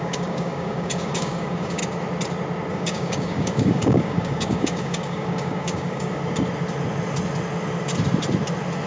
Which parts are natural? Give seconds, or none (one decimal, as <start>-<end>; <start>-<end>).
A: 1.8-2.7; 6.2-8.9